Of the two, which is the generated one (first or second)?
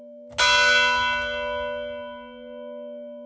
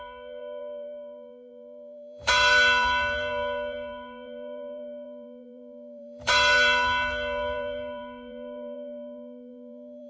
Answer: second